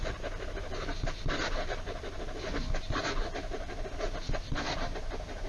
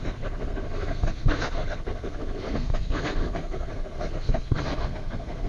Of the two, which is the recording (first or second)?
first